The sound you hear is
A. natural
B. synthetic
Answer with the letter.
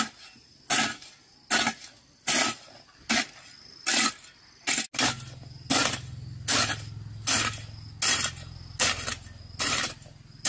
A